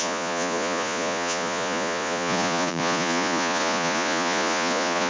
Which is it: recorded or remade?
remade